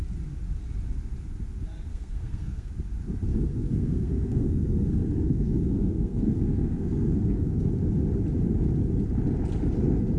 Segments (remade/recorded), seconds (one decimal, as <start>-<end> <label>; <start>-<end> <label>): 0.0-1.9 recorded; 1.9-2.7 remade; 2.7-3.3 recorded; 3.3-7.7 remade; 7.7-10.2 recorded